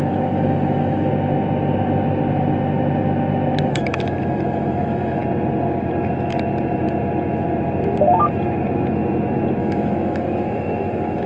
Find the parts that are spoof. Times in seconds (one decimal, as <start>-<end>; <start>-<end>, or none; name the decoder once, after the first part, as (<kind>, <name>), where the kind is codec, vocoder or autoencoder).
0.0-1.1 (autoencoder, DAC-VAE); 3.6-5.2; 9.6-11.3